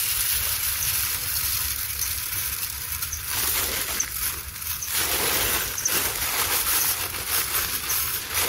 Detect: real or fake real